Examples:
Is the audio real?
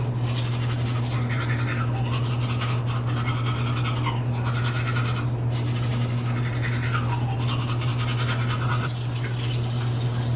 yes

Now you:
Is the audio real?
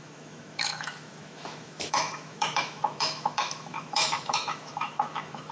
no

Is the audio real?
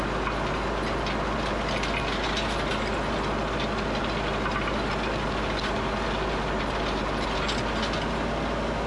yes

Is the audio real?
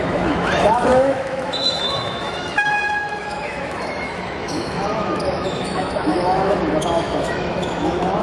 no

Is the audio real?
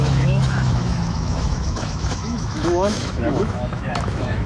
no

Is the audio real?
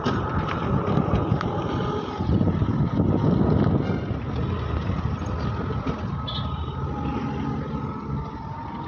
yes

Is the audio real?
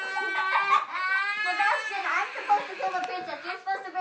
yes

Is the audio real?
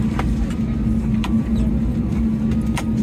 yes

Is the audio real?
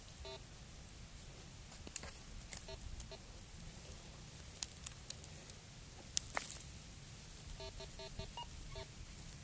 yes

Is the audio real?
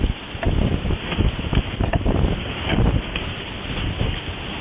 yes